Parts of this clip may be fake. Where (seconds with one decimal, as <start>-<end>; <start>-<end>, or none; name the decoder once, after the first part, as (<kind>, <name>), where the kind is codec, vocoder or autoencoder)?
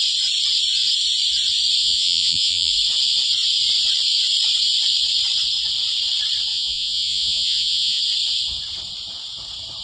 1.8-2.7 (vocoder, Vocos); 6.5-8.0